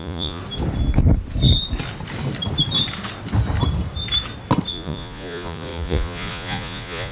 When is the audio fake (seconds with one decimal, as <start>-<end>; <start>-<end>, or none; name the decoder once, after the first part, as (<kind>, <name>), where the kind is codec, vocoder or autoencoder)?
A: 0.0-0.4 (vocoder, Vocos); 4.7-7.1